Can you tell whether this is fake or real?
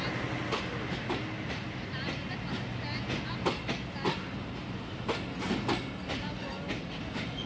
real